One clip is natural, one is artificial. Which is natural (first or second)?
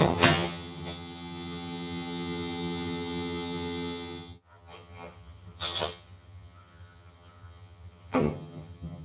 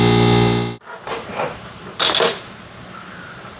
second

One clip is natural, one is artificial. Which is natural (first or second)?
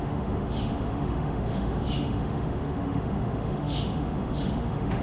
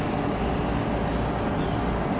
second